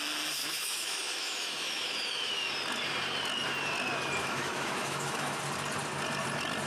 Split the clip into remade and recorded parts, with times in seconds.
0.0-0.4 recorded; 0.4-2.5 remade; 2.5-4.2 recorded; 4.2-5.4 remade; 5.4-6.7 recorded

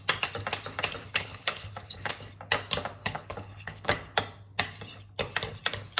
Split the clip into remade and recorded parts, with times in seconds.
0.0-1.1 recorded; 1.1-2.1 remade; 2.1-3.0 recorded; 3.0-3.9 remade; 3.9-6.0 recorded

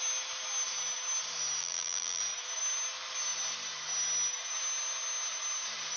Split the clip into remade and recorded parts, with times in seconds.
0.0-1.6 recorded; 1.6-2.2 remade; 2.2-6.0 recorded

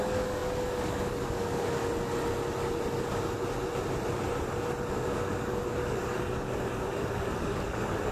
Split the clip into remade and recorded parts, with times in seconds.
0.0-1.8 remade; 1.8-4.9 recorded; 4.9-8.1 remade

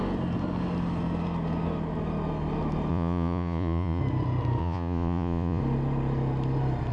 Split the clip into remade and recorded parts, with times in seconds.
0.0-2.9 recorded; 2.9-4.0 remade; 4.0-4.6 recorded; 4.6-5.6 remade; 5.6-6.9 recorded

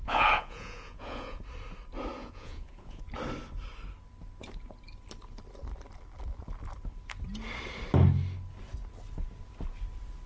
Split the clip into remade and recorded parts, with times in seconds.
0.0-1.4 remade; 1.4-2.2 recorded; 2.2-3.0 remade; 3.0-10.3 recorded

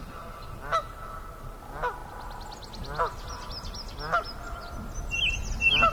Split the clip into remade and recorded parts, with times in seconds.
0.0-5.9 recorded

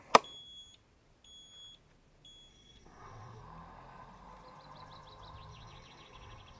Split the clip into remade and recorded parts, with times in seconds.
0.0-2.5 recorded; 2.5-3.4 remade; 3.4-5.5 recorded; 5.5-6.6 remade